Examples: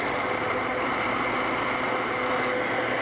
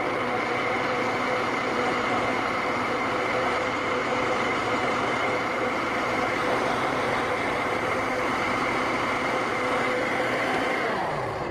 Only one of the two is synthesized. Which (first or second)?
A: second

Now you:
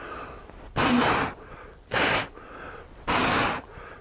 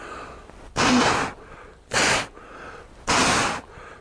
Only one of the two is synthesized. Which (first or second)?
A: first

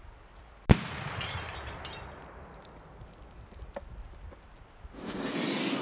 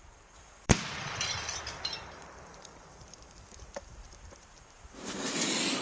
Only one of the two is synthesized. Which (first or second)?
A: second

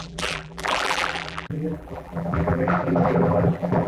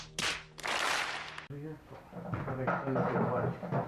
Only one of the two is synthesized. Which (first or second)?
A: first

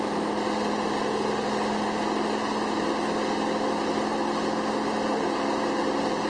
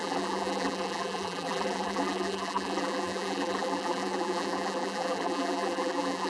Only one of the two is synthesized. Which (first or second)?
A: second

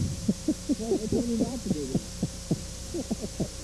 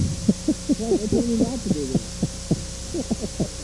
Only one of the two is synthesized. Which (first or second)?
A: first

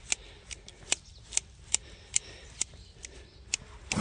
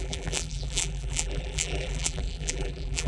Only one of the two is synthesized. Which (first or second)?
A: second